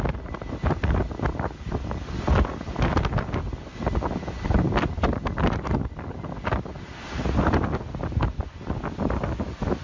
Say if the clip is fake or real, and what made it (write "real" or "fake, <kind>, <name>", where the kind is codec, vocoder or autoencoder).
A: real